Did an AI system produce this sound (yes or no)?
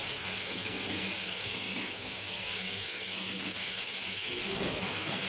yes